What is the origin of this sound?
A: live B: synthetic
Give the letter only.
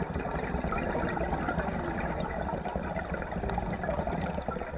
A